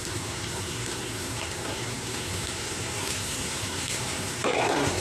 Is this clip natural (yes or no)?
no